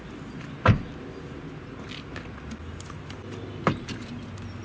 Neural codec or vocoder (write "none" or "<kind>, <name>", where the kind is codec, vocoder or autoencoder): none